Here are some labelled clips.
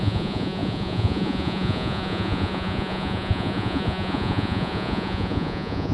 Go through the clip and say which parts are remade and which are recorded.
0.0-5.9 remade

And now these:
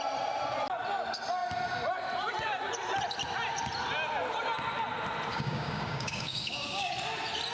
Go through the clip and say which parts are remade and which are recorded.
0.0-5.3 recorded; 5.3-6.9 remade; 6.9-7.5 recorded

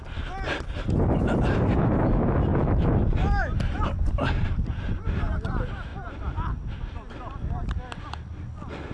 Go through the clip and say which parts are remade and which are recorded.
0.0-2.5 recorded; 2.5-5.1 remade; 5.1-8.9 recorded

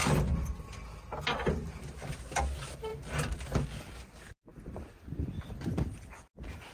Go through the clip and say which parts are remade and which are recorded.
0.0-6.7 recorded

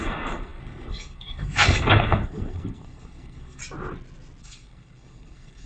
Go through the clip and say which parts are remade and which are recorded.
0.0-3.6 remade; 3.6-4.4 recorded; 4.4-5.7 remade